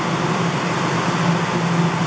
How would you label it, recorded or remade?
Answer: recorded